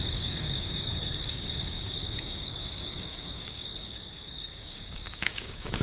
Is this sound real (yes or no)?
no